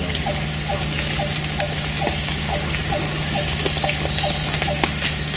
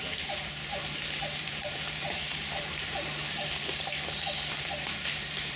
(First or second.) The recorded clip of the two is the first